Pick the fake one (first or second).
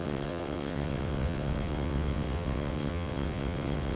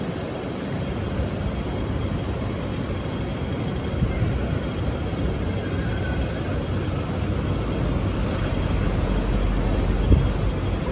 first